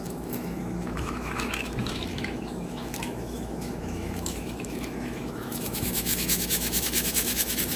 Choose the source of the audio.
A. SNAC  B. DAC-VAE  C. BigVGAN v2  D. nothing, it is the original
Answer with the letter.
B